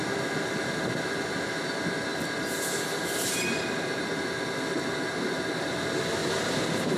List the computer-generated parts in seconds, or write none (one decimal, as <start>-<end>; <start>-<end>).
6.2-7.0